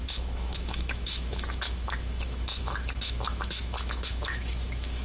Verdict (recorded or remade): remade